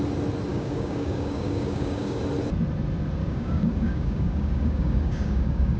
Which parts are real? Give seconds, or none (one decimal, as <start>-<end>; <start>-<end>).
0.0-0.5; 2.2-3.2